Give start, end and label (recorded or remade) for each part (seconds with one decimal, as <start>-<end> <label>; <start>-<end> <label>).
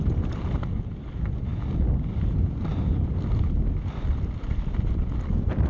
0.0-5.7 recorded